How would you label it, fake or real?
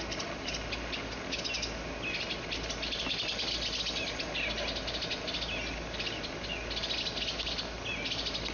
real